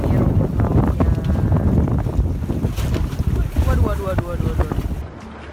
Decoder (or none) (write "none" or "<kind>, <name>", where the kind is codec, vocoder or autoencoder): none